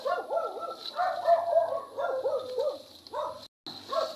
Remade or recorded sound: recorded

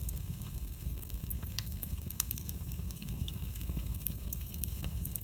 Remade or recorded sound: remade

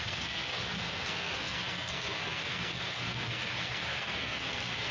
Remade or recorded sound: remade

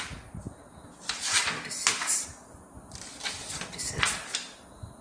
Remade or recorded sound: recorded